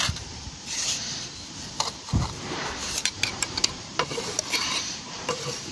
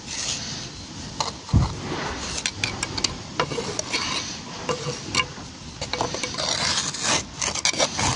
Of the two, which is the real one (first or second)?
second